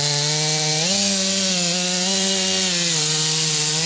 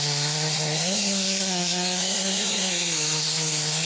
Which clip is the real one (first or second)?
first